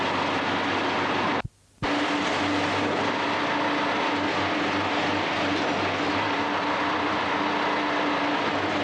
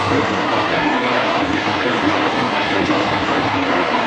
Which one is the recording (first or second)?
first